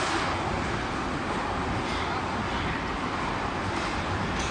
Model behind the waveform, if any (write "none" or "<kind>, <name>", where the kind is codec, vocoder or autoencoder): none